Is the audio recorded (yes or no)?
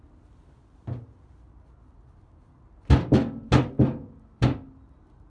yes